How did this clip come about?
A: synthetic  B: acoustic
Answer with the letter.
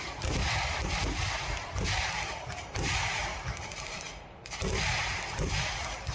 B